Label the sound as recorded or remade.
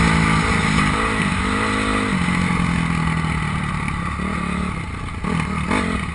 recorded